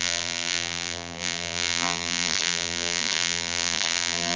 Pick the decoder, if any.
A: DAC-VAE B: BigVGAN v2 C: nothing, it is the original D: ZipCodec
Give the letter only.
B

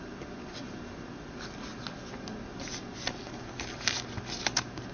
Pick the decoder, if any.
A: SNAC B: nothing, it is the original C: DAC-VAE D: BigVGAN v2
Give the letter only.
B